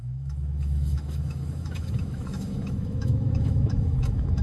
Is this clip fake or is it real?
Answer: fake